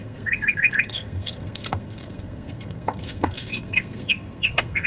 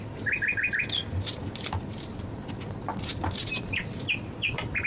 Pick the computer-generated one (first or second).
first